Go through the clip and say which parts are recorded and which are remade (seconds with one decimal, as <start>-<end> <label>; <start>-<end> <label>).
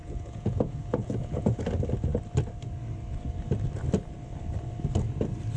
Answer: 0.0-1.6 remade; 1.6-5.6 recorded